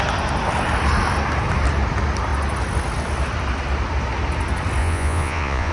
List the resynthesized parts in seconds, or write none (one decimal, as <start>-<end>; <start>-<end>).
4.8-5.7